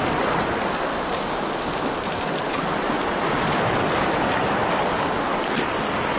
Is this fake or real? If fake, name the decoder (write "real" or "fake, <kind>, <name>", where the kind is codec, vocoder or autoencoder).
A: real